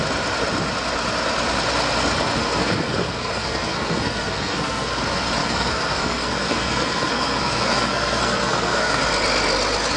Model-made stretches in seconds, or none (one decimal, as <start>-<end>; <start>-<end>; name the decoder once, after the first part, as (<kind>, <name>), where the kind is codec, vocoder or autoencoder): 2.4-5.0 (codec, SNAC); 5.4-9.0